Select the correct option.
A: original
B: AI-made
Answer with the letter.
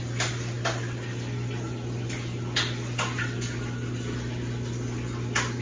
A